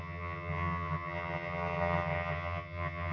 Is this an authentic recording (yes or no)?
no